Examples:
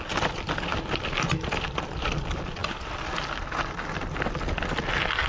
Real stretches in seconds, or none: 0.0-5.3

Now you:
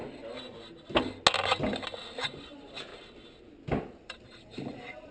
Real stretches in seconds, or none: 0.0-2.4; 2.9-3.8

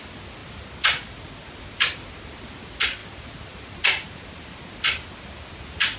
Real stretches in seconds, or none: 0.0-6.0

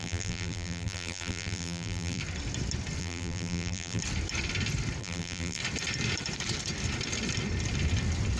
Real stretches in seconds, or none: 2.2-3.0; 4.0-5.0; 5.6-8.4